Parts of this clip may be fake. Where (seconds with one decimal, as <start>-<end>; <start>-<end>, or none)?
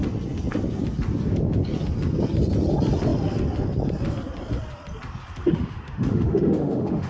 5.4-7.1